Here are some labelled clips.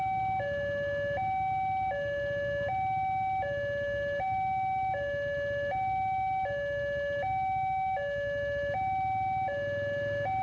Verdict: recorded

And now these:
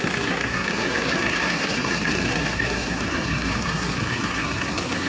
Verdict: remade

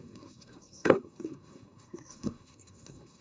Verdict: remade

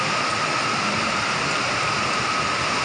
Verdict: recorded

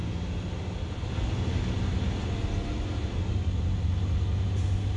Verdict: recorded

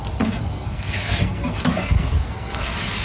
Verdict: remade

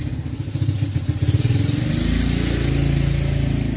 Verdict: recorded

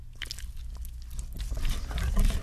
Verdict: recorded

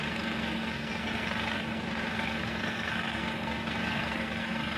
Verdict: remade